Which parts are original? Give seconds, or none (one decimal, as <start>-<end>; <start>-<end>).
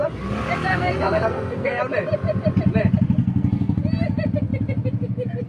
0.0-0.7; 1.8-3.2; 3.8-5.5